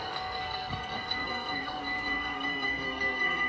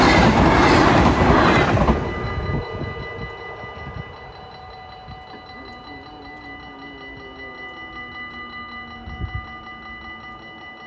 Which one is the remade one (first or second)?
first